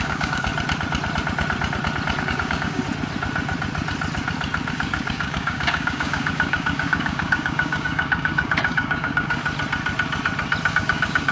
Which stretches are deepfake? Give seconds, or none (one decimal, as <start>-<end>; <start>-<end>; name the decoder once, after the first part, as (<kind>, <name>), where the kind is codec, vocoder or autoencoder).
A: 0.0-0.5 (codec, DAC); 2.2-2.8; 4.7-9.4; 10.7-11.3